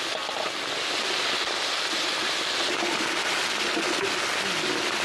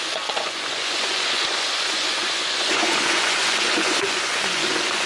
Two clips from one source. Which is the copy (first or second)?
second